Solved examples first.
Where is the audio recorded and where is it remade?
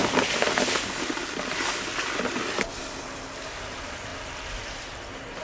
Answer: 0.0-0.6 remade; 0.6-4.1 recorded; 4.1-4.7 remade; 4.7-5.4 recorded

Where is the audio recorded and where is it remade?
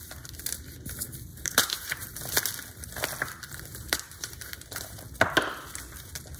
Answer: 0.0-1.3 recorded; 1.3-2.1 remade; 2.1-3.7 recorded; 3.7-5.0 remade; 5.0-6.4 recorded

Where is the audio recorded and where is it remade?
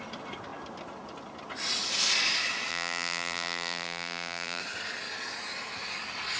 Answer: 0.0-2.7 recorded; 2.7-4.6 remade; 4.6-6.4 recorded